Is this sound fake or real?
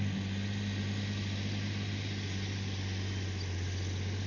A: real